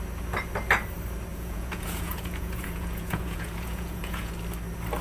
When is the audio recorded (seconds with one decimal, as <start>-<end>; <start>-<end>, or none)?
0.0-1.3; 4.3-5.0